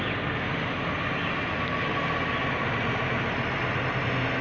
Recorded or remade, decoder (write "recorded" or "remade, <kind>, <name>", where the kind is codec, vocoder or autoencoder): recorded